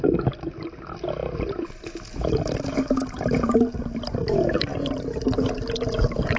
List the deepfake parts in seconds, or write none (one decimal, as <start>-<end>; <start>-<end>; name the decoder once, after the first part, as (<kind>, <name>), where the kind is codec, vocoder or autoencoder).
none